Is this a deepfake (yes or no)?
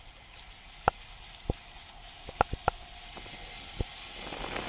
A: no